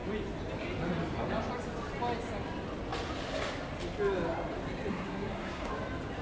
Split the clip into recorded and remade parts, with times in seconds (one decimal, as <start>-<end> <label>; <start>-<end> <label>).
0.0-4.9 recorded; 4.9-5.7 remade; 5.7-6.2 recorded